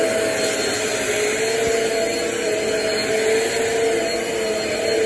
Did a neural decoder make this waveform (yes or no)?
no